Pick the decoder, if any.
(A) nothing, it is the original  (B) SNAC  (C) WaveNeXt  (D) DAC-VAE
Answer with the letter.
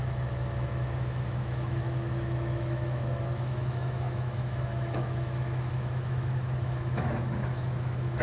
D